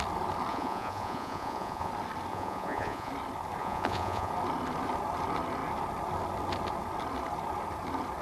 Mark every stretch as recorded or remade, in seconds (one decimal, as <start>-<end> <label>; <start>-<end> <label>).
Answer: 0.0-0.5 recorded; 0.5-1.9 remade; 1.9-2.3 recorded; 2.3-3.1 remade; 3.1-3.6 recorded; 3.6-4.3 remade; 4.3-8.2 recorded